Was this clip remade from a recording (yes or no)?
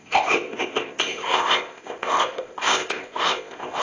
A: yes